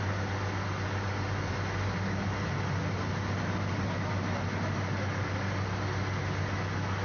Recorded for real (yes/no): yes